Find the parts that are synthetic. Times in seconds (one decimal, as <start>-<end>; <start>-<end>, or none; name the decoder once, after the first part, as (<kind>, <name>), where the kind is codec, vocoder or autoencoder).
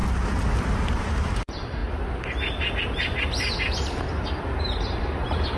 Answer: 0.6-1.8 (vocoder, BigVGAN v2); 4.6-5.6